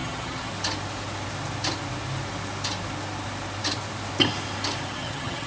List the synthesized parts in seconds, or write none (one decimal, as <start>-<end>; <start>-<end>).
0.0-0.5; 4.9-5.5